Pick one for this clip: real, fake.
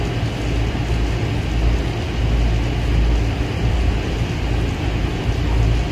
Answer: real